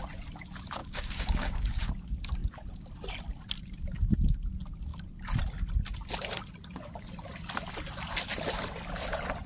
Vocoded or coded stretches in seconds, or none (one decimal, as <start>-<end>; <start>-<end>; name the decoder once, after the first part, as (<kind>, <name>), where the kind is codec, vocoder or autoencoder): 0.8-1.9 (codec, DAC)